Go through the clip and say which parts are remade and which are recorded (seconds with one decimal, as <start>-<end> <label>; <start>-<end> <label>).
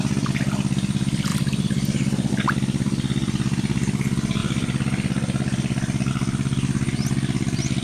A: 0.0-7.8 recorded